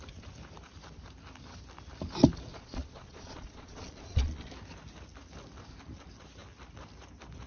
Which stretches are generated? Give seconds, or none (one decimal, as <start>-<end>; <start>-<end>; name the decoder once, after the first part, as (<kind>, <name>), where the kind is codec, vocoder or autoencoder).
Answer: 2.5-4.5 (vocoder, Vocos)